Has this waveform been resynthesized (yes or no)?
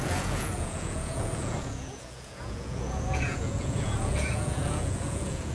yes